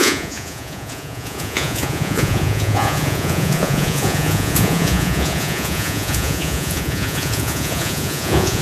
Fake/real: fake